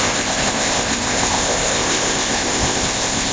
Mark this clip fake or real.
fake